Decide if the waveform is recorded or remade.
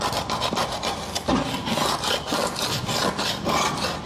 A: recorded